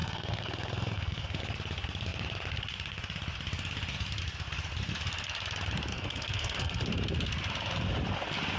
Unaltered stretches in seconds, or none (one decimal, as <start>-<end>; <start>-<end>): 1.4-5.9; 6.8-8.6